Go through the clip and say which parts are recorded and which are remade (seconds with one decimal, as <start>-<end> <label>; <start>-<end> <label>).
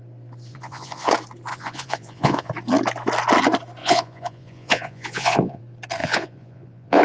0.0-0.5 recorded; 0.5-1.1 remade; 1.1-1.5 recorded; 1.5-2.5 remade; 2.5-3.8 recorded; 3.8-5.6 remade; 5.6-6.0 recorded; 6.0-7.0 remade